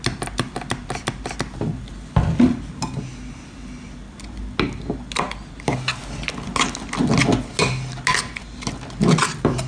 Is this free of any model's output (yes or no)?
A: yes